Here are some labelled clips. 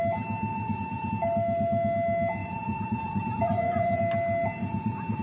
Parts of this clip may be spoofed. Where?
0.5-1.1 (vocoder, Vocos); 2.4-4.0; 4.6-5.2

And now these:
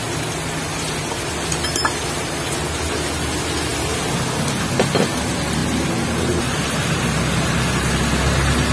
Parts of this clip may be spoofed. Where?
none

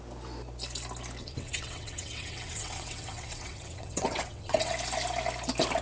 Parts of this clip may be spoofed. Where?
1.2-4.7 (vocoder, WaveNeXt)

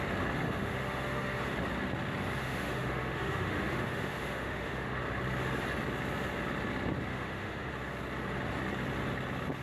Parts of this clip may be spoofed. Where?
0.6-1.4 (autoencoder, DAC-VAE); 2.4-5.0; 7.1-7.7

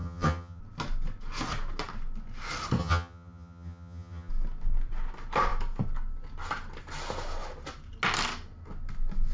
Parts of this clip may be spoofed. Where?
0.0-0.6 (vocoder, HiFi-GAN); 2.8-4.3

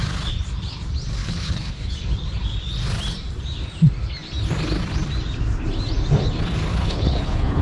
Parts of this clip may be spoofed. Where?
1.2-1.9 (codec, HILCodec); 6.7-7.6

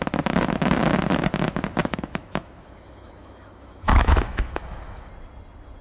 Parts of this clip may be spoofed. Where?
1.8-5.1 (autoencoder, DAC-VAE)

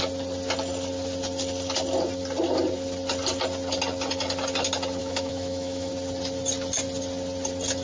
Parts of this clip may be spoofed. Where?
5.0-5.9 (autoencoder, DAC-VAE)